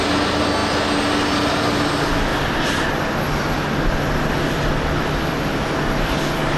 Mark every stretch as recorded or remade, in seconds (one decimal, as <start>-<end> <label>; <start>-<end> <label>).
0.0-2.3 recorded; 2.3-5.5 remade; 5.5-6.6 recorded